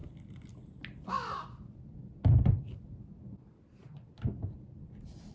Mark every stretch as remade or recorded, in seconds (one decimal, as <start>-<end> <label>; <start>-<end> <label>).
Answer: 0.0-5.3 recorded